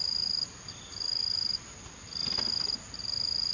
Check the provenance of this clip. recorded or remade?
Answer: recorded